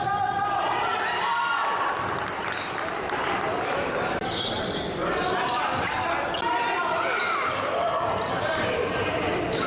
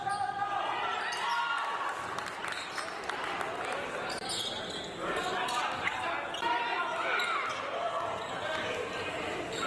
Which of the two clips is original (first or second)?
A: second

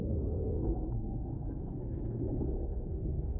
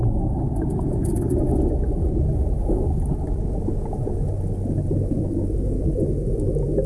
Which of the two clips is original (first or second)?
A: second